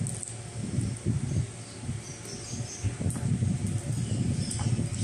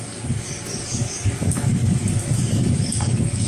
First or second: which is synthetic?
second